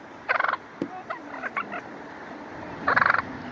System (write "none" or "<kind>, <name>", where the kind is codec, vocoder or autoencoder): none